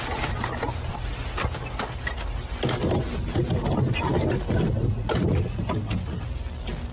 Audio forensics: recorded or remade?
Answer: recorded